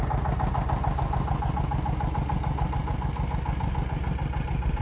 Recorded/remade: recorded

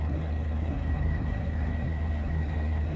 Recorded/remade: remade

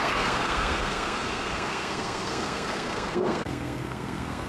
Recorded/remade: remade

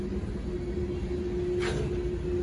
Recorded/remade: recorded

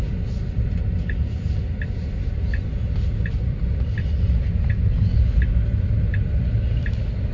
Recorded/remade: recorded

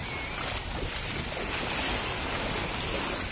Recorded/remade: recorded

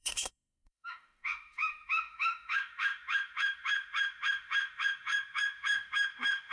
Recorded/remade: remade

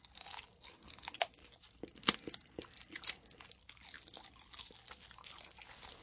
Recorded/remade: recorded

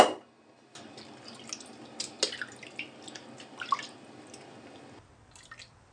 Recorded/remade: recorded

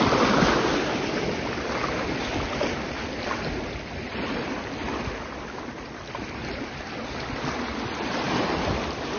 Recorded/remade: recorded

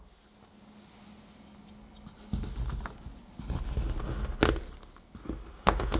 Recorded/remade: recorded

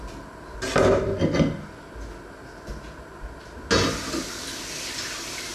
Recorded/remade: recorded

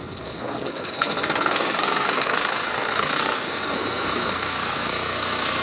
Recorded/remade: remade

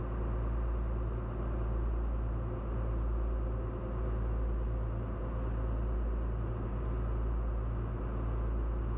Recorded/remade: recorded